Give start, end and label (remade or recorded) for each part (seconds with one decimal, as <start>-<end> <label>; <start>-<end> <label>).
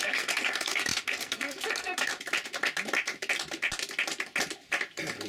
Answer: 0.0-2.1 remade; 2.1-5.3 recorded